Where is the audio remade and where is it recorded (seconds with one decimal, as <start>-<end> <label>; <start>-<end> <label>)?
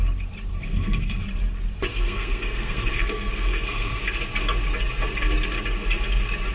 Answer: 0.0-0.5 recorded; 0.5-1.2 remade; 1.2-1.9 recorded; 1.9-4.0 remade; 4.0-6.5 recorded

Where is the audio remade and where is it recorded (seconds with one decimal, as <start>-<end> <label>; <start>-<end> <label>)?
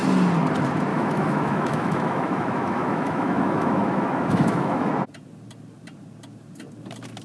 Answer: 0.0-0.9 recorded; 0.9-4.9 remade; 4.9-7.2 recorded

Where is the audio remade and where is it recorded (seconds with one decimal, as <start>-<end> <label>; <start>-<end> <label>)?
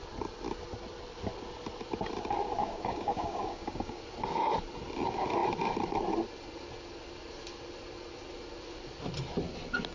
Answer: 0.0-2.6 recorded; 2.6-4.0 remade; 4.0-9.9 recorded